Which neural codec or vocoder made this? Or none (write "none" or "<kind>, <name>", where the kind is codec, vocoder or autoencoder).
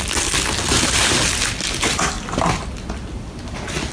none